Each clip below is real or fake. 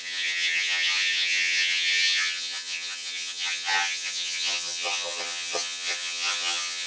fake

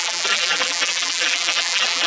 fake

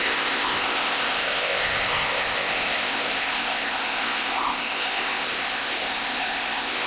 fake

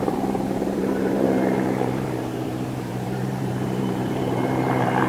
fake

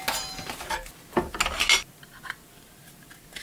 real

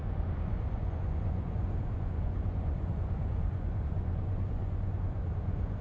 fake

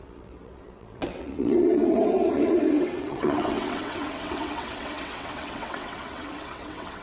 fake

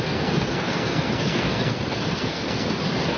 fake